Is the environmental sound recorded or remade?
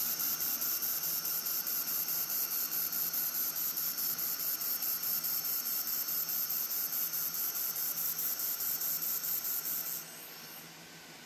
recorded